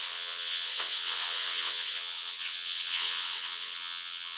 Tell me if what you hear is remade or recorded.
remade